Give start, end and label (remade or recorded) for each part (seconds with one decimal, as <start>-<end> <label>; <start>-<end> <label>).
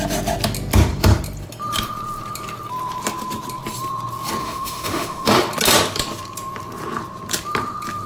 0.0-4.4 recorded; 4.4-5.3 remade; 5.3-8.1 recorded